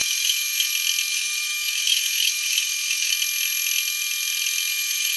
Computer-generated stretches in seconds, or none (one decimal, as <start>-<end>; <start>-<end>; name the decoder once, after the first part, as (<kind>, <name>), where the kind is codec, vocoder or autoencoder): 0.0-0.7 (autoencoder, DAC-VAE); 1.1-3.1; 4.7-5.2